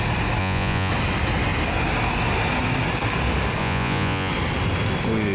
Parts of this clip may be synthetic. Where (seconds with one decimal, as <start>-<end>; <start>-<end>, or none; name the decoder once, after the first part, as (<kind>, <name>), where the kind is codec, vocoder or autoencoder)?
0.4-0.9 (vocoder, Vocos); 3.6-4.3

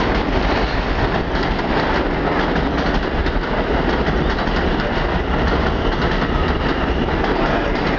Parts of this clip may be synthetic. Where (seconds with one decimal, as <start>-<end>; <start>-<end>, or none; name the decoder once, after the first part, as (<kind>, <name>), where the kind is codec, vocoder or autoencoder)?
none

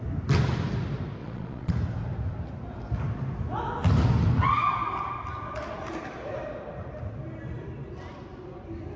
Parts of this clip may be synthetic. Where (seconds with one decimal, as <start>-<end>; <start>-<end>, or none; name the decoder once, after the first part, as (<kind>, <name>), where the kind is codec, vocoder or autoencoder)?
1.2-1.7 (vocoder, Vocos)

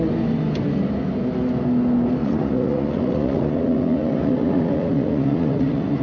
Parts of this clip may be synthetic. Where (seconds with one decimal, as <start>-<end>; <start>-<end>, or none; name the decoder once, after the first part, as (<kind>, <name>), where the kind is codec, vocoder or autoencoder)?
2.2-6.0 (vocoder, Vocos)

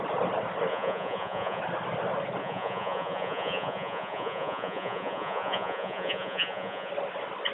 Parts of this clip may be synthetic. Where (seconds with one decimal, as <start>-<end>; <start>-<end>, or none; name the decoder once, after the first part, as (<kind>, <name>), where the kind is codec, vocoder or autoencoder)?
0.7-1.6 (vocoder, Vocos); 2.4-6.9

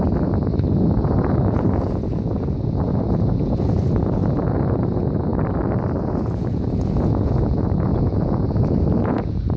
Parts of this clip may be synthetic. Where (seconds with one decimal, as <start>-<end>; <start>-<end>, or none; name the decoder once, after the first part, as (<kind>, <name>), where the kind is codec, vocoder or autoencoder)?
0.0-5.3 (vocoder, Vocos); 6.0-9.6

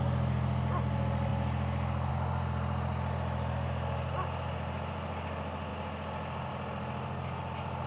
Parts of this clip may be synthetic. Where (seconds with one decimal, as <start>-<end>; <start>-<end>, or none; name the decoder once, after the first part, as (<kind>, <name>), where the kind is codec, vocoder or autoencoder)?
none